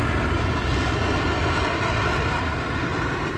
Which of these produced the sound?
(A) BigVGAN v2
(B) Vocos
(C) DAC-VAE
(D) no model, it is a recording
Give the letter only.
D